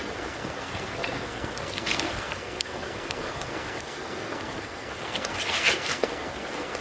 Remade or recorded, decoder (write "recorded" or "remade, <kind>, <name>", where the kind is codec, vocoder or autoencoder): remade, codec, SNAC